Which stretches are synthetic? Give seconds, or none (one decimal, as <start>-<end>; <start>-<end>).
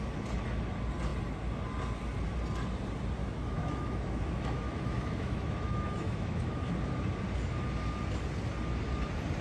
3.2-6.7